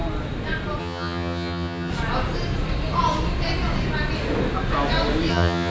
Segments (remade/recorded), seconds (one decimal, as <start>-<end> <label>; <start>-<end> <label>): 0.0-0.8 recorded; 0.8-1.9 remade; 1.9-5.3 recorded; 5.3-5.7 remade